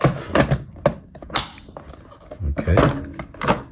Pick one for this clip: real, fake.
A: real